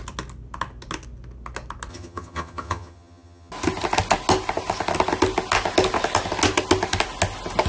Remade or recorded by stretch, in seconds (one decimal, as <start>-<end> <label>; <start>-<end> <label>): 0.0-1.9 recorded; 1.9-3.5 remade; 3.5-7.7 recorded